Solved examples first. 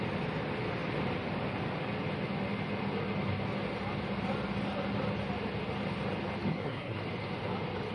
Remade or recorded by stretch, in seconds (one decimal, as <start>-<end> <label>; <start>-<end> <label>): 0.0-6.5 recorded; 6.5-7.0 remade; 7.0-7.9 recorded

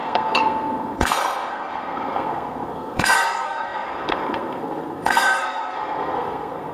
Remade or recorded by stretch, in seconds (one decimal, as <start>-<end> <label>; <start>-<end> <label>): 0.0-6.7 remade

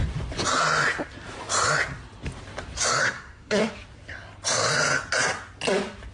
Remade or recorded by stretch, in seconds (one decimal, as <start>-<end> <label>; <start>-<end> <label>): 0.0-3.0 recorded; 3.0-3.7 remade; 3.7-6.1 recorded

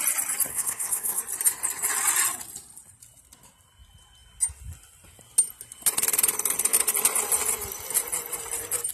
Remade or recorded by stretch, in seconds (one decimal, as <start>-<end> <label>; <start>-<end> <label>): 0.0-0.5 recorded; 0.5-1.2 remade; 1.2-8.9 recorded

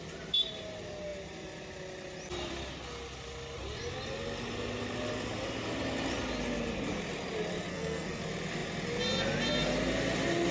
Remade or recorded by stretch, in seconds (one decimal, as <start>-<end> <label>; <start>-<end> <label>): 0.0-7.7 recorded; 7.7-8.2 remade; 8.2-10.5 recorded

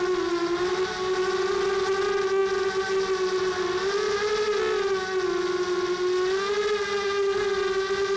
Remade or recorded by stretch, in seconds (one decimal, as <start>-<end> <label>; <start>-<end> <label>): 0.0-8.2 recorded